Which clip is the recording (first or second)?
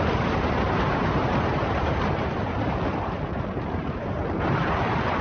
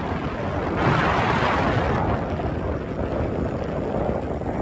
second